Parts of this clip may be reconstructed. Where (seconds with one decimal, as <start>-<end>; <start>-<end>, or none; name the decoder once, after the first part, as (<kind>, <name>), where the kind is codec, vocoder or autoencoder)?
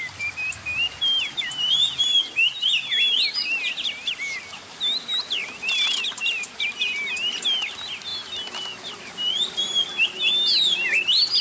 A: none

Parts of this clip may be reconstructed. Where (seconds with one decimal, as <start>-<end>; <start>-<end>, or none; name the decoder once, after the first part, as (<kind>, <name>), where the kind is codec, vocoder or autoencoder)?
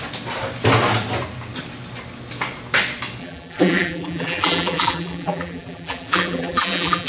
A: 3.2-7.1 (vocoder, BigVGAN v2)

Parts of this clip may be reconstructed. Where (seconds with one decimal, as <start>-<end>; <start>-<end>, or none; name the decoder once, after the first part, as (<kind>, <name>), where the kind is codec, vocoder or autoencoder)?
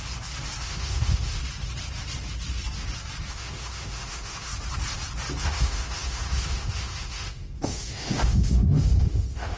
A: 0.6-1.4 (autoencoder, DAC-VAE); 3.3-4.5; 5.4-9.6